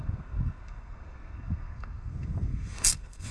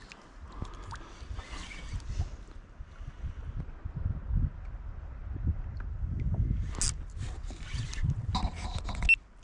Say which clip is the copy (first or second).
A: first